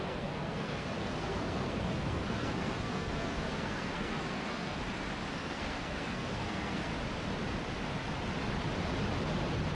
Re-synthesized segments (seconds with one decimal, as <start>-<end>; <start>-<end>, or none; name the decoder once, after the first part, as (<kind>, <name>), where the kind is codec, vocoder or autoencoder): 0.0-4.8 (codec, SNAC); 5.4-6.9